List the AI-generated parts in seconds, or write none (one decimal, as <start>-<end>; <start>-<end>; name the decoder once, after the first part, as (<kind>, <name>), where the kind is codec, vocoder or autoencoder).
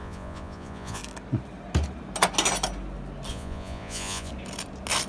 0.0-1.0 (vocoder, Vocos); 3.3-4.3